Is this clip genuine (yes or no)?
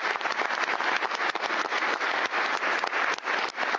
yes